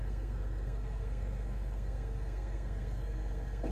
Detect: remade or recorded remade